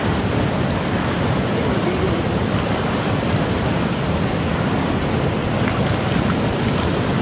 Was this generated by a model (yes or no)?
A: yes